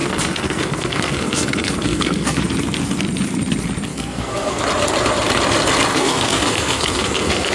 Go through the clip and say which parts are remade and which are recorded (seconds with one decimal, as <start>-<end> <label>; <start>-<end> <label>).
0.0-2.4 remade; 2.4-3.9 recorded; 3.9-4.6 remade; 4.6-5.9 recorded; 5.9-7.5 remade